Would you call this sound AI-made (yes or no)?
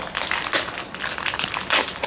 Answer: no